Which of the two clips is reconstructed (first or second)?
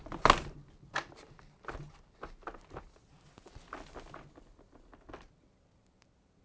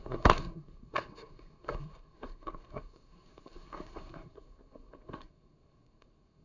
second